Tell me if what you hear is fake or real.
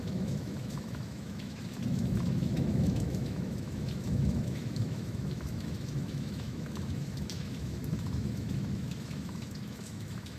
fake